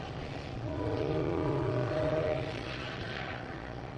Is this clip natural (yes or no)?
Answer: no